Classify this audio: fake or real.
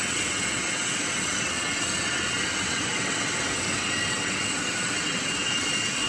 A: fake